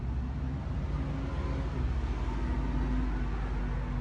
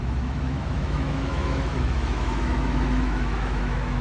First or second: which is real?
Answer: first